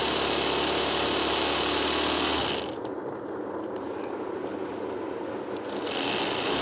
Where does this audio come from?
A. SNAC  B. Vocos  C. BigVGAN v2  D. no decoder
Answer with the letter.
D